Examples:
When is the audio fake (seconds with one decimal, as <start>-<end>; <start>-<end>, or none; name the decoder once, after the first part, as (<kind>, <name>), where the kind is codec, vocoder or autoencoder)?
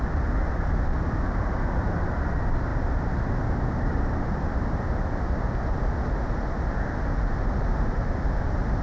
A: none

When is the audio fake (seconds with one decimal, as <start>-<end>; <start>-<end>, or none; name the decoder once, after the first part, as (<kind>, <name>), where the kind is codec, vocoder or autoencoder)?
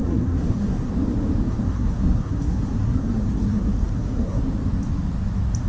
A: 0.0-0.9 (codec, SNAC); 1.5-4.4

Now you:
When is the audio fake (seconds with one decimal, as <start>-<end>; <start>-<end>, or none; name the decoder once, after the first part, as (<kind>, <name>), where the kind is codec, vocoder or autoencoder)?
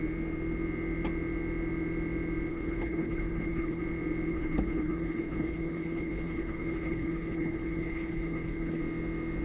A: 2.5-3.8 (codec, HILCodec); 4.3-8.8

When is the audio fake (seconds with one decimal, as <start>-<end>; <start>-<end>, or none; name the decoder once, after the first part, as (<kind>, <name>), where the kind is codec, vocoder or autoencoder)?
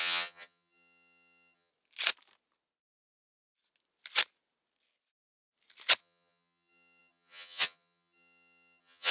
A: 0.0-1.7 (vocoder, HiFi-GAN); 6.0-9.1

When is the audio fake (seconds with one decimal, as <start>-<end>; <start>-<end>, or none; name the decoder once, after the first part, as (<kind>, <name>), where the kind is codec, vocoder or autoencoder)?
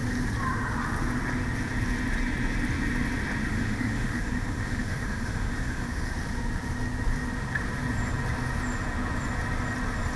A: 3.5-6.1 (autoencoder, DAC-VAE)